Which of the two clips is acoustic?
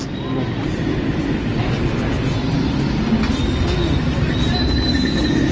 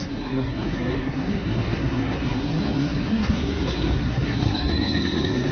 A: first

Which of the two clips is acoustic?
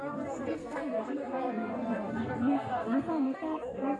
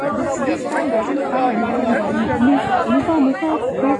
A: second